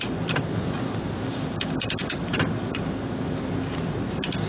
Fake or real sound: fake